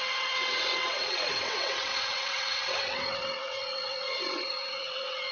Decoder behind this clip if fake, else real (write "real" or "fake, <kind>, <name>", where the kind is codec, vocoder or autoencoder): fake, vocoder, WaveNeXt